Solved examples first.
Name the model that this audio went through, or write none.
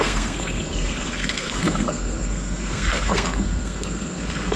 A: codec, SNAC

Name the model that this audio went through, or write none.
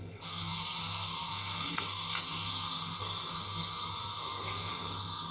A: codec, SNAC